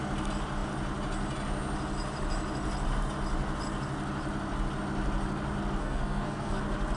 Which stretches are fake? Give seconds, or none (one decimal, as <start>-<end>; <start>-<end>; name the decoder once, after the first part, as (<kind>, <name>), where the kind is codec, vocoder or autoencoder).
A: 5.8-6.6 (codec, SNAC)